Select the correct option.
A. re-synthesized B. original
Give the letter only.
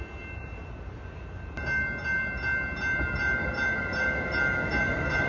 B